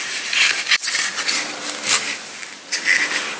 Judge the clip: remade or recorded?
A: recorded